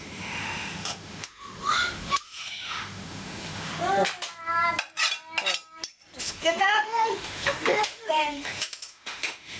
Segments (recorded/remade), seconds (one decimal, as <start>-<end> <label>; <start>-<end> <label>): 0.0-3.8 remade; 3.8-6.2 recorded; 6.2-9.6 remade